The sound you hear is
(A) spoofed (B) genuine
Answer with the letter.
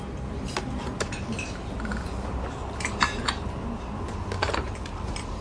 B